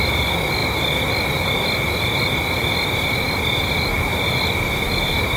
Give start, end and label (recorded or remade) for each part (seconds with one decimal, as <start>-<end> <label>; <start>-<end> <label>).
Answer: 0.0-5.4 recorded